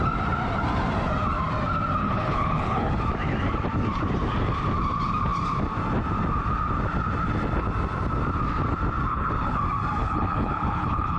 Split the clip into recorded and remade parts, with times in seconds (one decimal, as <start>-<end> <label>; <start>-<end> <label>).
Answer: 0.0-2.0 recorded; 2.0-2.9 remade; 2.9-9.1 recorded; 9.1-9.6 remade; 9.6-10.0 recorded; 10.0-11.2 remade

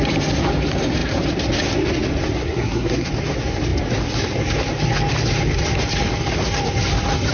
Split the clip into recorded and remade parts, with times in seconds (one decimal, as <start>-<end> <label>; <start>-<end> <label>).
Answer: 0.0-2.4 recorded; 2.4-3.1 remade; 3.1-7.3 recorded

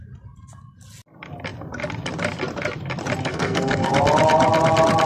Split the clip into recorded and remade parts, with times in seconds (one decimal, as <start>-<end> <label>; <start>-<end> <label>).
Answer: 0.0-3.3 recorded; 3.3-3.9 remade; 3.9-5.1 recorded

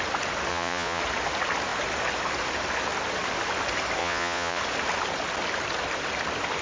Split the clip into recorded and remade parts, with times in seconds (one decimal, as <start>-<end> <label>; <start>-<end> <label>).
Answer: 0.0-0.5 recorded; 0.5-1.0 remade; 1.0-4.0 recorded; 4.0-4.6 remade; 4.6-6.6 recorded

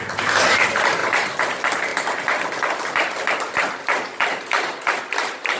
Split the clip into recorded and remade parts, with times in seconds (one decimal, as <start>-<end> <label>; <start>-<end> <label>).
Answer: 0.0-1.0 remade; 1.0-1.5 recorded; 1.5-1.9 remade; 1.9-5.0 recorded; 5.0-5.6 remade

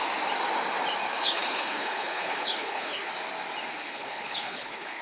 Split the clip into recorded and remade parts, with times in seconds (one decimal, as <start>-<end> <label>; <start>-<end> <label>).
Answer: 0.0-1.1 recorded; 1.1-3.1 remade; 3.1-3.8 recorded; 3.8-5.0 remade

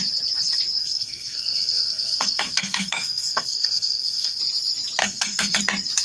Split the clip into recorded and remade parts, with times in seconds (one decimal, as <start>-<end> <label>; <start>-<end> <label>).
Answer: 0.0-0.8 recorded; 0.8-4.4 remade; 4.4-5.0 recorded; 5.0-5.6 remade; 5.6-6.0 recorded

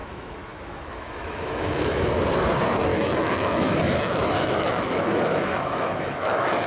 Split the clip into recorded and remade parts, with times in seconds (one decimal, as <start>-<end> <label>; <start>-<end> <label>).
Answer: 0.0-2.1 remade; 2.1-2.9 recorded; 2.9-6.7 remade